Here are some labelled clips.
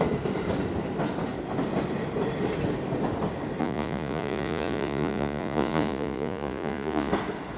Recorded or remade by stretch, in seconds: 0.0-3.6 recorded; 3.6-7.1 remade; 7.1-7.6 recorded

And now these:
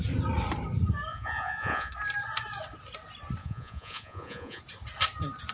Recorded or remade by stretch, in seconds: 0.0-1.1 recorded; 1.1-1.9 remade; 1.9-3.4 recorded; 3.4-4.6 remade; 4.6-5.5 recorded

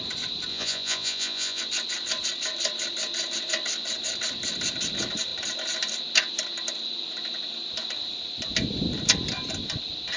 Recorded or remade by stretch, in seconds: 0.0-0.5 recorded; 0.5-1.6 remade; 1.6-10.2 recorded

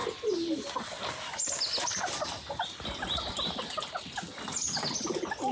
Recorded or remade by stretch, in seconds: 0.0-5.5 recorded